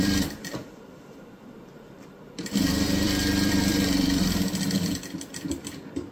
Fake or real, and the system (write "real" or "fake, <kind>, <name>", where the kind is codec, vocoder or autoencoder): fake, vocoder, BigVGAN v2